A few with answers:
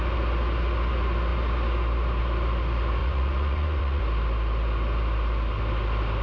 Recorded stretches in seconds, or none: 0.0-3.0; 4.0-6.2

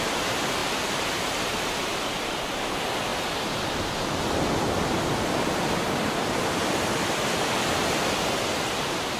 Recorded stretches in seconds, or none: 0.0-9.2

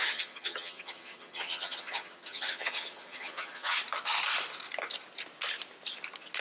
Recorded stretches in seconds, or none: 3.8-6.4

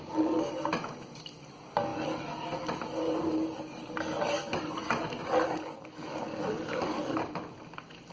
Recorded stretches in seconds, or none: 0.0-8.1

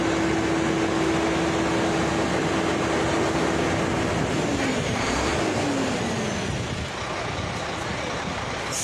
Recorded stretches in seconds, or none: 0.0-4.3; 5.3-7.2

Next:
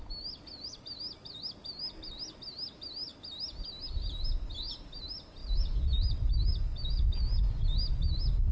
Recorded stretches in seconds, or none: 0.0-8.5

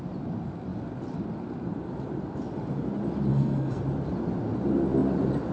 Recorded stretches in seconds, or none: 0.0-3.3; 3.8-5.5